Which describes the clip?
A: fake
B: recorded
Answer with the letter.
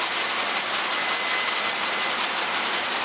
B